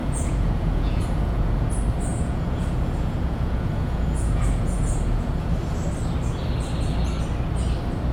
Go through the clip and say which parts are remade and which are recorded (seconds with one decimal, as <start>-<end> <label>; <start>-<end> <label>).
0.0-1.7 remade; 1.7-2.1 recorded; 2.1-5.5 remade; 5.5-8.1 recorded